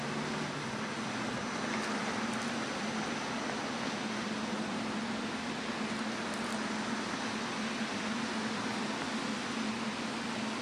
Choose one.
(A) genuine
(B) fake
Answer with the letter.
A